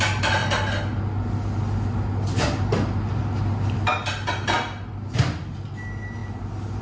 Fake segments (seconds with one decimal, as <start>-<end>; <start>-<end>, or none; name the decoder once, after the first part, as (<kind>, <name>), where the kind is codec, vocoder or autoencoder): none